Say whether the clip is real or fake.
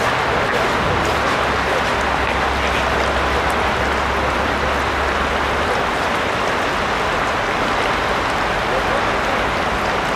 real